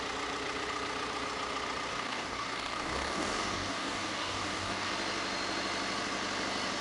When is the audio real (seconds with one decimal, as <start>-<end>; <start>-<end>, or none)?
0.0-1.9; 4.9-6.8